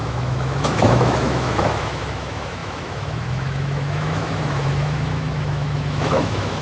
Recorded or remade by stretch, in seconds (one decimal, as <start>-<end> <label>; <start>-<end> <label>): 0.0-6.6 remade